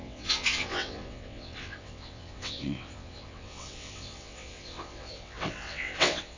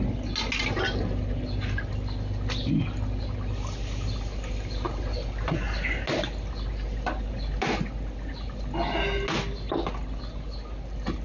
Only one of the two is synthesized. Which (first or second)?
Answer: first